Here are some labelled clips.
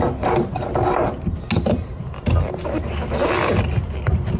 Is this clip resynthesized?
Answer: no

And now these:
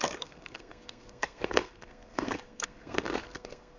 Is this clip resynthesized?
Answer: yes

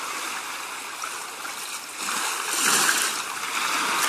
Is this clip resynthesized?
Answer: no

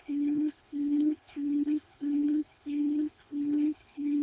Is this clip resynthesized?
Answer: yes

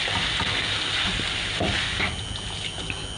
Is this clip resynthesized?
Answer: no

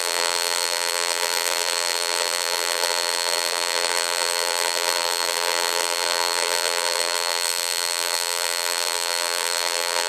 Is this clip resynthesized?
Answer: yes